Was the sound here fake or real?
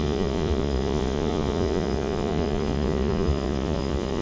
fake